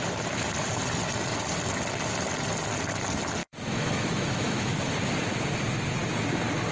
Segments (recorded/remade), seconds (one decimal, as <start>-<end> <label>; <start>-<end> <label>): 0.0-3.4 recorded; 3.4-4.9 remade; 4.9-6.7 recorded

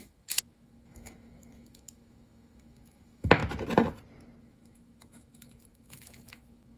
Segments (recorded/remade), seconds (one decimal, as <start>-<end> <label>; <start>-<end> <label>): 0.0-3.4 remade; 3.4-4.4 recorded; 4.4-6.8 remade

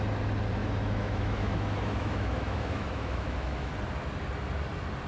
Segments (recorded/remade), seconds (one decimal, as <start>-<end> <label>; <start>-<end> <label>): 0.0-0.6 recorded; 0.6-3.7 remade; 3.7-5.1 recorded

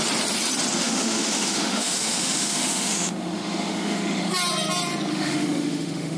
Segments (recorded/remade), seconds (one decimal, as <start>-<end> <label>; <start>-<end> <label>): 0.0-0.8 recorded; 0.8-4.3 remade; 4.3-5.1 recorded; 5.1-6.2 remade

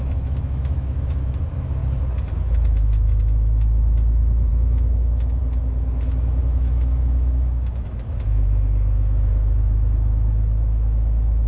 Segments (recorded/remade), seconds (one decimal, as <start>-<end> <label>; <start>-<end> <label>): 0.0-1.8 remade; 1.8-2.3 recorded; 2.3-11.5 remade

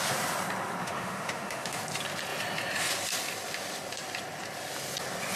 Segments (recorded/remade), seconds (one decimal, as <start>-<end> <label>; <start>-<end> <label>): 0.0-0.8 recorded; 0.8-1.8 remade; 1.8-5.4 recorded

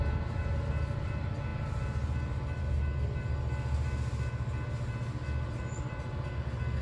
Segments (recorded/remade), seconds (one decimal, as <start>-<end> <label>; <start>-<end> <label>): 0.0-6.8 recorded